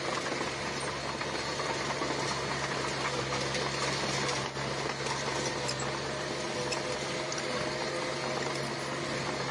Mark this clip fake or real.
real